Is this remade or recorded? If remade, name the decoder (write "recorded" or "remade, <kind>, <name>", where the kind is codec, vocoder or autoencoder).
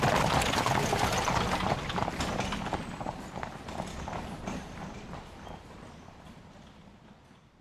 recorded